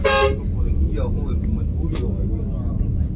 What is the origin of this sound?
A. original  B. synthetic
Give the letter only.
A